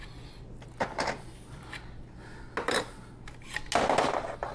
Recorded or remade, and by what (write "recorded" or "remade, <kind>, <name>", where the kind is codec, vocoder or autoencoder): recorded